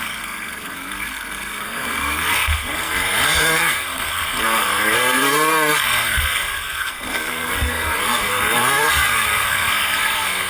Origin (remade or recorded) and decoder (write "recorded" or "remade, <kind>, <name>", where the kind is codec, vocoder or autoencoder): remade, codec, SNAC